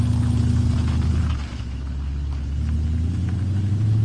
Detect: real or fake real